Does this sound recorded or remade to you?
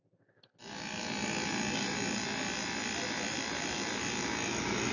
recorded